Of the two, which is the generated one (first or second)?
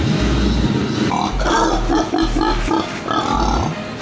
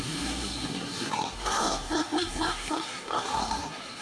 second